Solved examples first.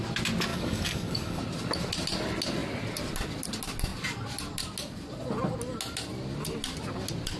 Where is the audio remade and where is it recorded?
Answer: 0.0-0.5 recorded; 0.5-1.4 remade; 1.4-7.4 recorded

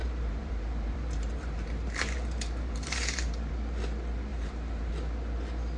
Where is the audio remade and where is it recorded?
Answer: 0.0-3.5 remade; 3.5-4.3 recorded; 4.3-4.9 remade; 4.9-5.8 recorded

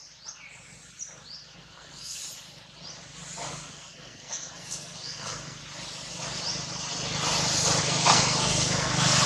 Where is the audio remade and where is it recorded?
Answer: 0.0-1.6 recorded; 1.6-2.2 remade; 2.2-3.5 recorded; 3.5-5.6 remade; 5.6-7.8 recorded; 7.8-9.3 remade

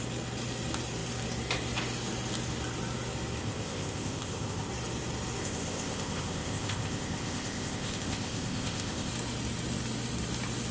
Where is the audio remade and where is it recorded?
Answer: 0.0-3.4 recorded; 3.4-4.7 remade; 4.7-5.4 recorded; 5.4-9.1 remade; 9.1-10.7 recorded

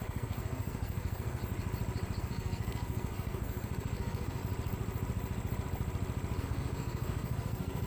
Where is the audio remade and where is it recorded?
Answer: 0.0-1.4 remade; 1.4-2.2 recorded; 2.2-4.4 remade; 4.4-6.4 recorded; 6.4-7.9 remade

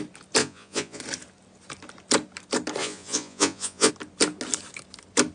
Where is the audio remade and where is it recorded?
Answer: 0.0-0.4 recorded; 0.4-1.0 remade; 1.0-2.8 recorded; 2.8-3.9 remade; 3.9-5.3 recorded